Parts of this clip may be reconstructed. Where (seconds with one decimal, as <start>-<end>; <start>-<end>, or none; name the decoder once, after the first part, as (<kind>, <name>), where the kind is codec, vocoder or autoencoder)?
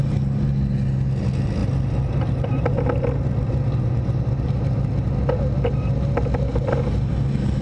none